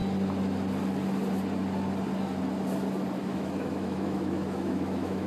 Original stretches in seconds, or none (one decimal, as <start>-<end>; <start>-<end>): 0.0-3.2